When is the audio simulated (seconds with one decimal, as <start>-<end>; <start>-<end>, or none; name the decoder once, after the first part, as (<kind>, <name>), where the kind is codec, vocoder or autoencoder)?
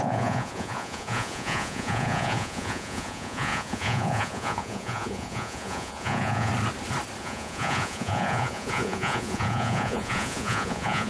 0.0-6.5 (vocoder, Vocos); 7.2-11.1